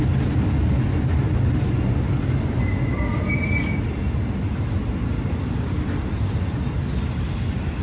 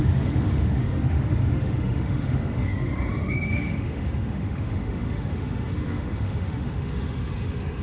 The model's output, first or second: second